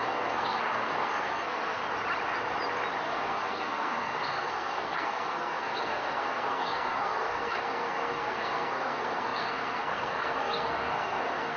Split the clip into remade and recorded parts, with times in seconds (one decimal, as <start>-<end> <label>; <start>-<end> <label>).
0.0-1.8 remade; 1.8-3.0 recorded; 3.0-11.6 remade